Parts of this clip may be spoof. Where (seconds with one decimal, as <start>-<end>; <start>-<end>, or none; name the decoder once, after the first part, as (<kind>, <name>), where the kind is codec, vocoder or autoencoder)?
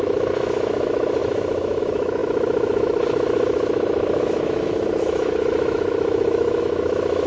0.0-7.3 (autoencoder, DAC-VAE)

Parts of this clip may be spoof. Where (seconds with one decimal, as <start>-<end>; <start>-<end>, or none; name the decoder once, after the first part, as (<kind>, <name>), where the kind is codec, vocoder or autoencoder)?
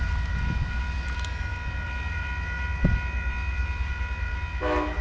none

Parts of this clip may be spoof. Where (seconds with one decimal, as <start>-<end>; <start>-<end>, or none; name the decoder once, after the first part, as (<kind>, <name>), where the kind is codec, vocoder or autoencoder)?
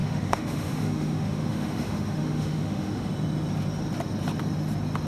0.0-3.1 (autoencoder, DAC-VAE)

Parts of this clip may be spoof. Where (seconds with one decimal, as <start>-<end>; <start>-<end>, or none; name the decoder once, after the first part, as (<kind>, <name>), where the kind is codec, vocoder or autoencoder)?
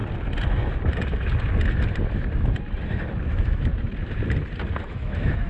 3.3-3.7 (autoencoder, DAC-VAE); 4.8-5.5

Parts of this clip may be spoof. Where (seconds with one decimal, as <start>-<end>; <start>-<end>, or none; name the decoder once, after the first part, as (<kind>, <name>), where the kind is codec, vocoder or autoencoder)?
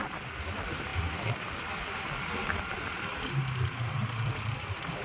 none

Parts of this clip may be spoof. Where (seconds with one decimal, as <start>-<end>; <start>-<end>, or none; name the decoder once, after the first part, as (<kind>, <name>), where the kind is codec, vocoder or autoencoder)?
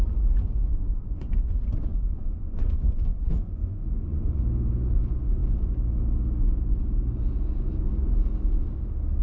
0.7-1.3 (vocoder, Vocos); 1.9-4.4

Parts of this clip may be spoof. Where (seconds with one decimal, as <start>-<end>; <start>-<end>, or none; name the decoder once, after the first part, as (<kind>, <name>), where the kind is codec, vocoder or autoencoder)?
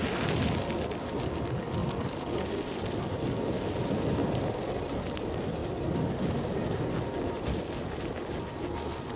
none